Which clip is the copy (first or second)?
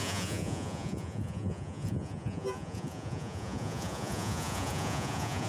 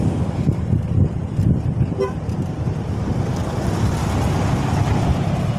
first